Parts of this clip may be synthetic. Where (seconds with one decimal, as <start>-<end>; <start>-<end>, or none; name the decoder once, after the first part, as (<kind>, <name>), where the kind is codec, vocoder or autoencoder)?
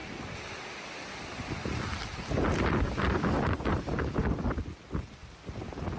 2.5-6.0 (vocoder, BigVGAN v2)